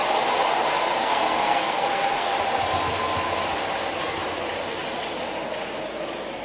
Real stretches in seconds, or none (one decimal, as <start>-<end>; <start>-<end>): 0.0-1.0; 2.3-6.4